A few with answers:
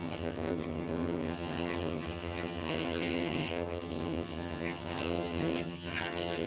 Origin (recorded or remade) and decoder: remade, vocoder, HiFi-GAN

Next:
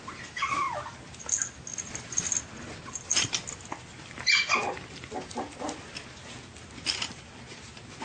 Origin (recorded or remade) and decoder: recorded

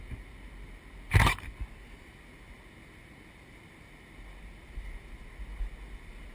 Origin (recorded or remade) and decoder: recorded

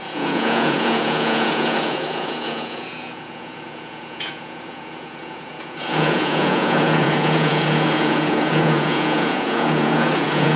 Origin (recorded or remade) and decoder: remade, vocoder, Vocos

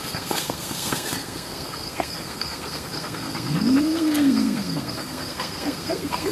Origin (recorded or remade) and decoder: remade, codec, SNAC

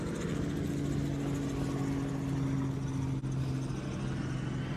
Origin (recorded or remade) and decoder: recorded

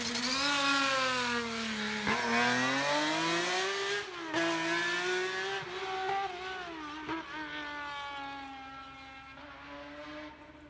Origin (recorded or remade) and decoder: recorded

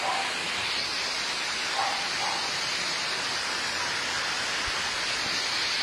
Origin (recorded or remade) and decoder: recorded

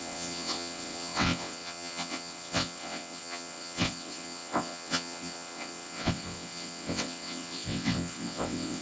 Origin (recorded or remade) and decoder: remade, vocoder, WaveNeXt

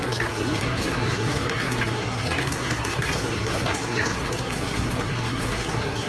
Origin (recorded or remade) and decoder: remade, codec, SNAC